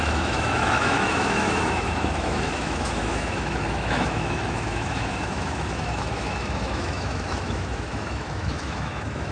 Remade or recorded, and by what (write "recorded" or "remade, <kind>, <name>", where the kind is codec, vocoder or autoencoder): remade, autoencoder, DAC-VAE